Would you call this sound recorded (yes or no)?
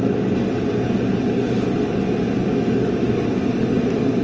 yes